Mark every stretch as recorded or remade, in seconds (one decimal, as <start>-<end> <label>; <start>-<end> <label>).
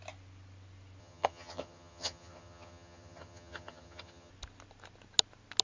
0.0-1.0 recorded; 1.0-4.3 remade; 4.3-5.6 recorded